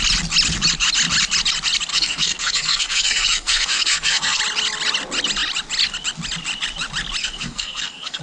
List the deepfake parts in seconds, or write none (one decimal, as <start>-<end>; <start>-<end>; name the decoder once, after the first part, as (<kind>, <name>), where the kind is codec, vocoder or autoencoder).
1.9-4.4 (codec, SNAC); 7.2-8.2